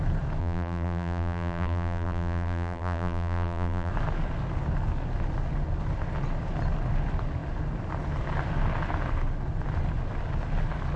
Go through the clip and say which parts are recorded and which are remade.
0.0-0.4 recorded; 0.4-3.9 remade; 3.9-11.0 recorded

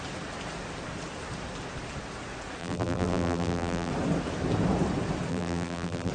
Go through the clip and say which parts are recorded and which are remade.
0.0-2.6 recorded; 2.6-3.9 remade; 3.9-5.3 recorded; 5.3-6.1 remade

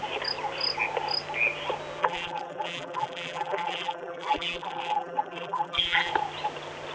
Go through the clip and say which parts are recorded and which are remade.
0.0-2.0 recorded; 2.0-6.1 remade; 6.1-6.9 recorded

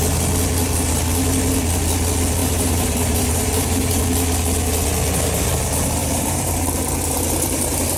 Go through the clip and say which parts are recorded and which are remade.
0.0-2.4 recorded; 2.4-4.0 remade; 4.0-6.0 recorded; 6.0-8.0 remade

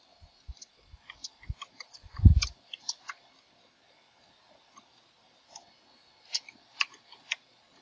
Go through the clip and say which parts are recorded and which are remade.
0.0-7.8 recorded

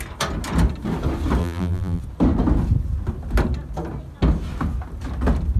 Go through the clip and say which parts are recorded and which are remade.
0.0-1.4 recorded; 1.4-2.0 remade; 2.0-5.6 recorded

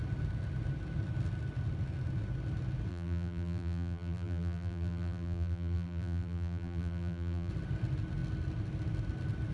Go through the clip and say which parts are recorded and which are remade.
0.0-2.9 recorded; 2.9-7.5 remade; 7.5-9.5 recorded

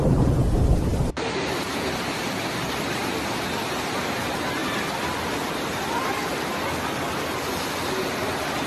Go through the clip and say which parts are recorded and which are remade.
0.0-0.4 recorded; 0.4-1.0 remade; 1.0-8.7 recorded